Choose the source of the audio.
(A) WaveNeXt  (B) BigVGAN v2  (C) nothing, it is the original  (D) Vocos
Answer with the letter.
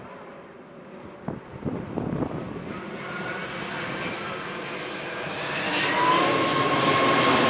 C